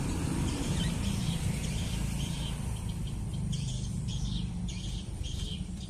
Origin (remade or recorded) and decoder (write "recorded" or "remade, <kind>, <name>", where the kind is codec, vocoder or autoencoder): remade, vocoder, BigVGAN v2